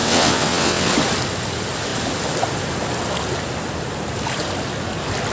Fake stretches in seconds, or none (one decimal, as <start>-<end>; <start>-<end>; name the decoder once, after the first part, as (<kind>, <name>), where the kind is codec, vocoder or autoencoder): 0.0-0.9 (vocoder, WaveNeXt)